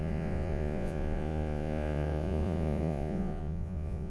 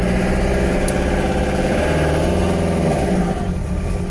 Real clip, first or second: second